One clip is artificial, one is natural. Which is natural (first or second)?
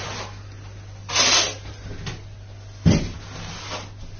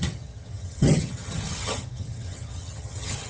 first